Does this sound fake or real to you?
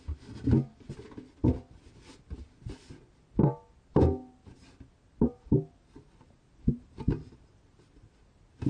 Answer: real